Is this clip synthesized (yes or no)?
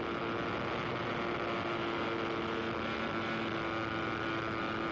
no